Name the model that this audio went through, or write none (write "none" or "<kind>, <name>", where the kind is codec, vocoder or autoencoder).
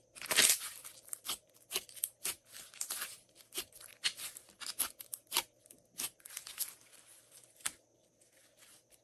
none